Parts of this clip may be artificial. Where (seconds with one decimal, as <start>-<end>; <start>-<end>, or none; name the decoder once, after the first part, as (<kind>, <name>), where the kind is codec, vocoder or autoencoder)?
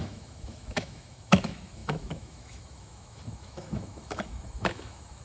0.0-5.2 (autoencoder, DAC-VAE)